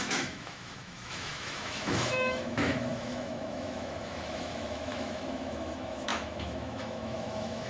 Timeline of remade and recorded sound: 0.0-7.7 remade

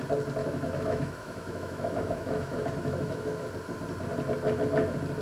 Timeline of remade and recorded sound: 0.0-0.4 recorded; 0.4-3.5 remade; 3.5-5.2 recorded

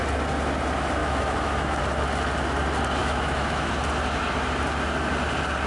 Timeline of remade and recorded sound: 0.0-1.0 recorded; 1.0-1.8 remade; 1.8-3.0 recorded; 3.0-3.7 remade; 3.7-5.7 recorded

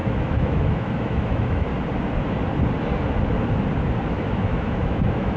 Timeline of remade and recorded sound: 0.0-1.7 remade; 1.7-4.1 recorded; 4.1-5.4 remade

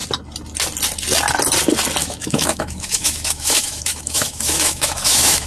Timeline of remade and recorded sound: 0.0-2.0 recorded; 2.0-5.5 remade

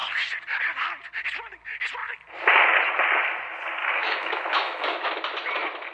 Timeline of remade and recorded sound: 0.0-3.8 recorded; 3.8-5.1 remade; 5.1-5.9 recorded